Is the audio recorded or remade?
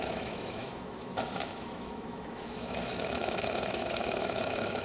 remade